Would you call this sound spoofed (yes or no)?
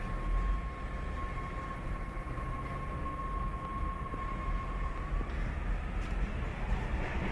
no